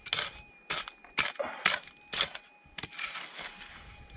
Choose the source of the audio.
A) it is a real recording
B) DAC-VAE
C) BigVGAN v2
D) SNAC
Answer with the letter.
A